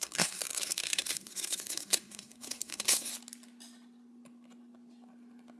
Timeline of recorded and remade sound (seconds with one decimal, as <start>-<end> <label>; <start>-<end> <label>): 0.0-3.1 remade; 3.1-5.6 recorded